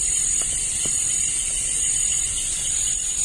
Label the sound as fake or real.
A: real